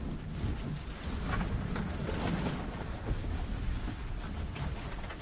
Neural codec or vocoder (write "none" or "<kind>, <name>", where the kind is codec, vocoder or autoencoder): none